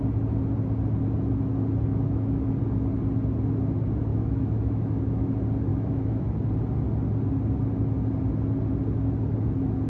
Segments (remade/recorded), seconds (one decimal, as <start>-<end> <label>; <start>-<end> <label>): 0.0-1.9 recorded; 1.9-2.5 remade; 2.5-4.1 recorded; 4.1-5.3 remade; 5.3-5.7 recorded; 5.7-6.2 remade; 6.2-9.9 recorded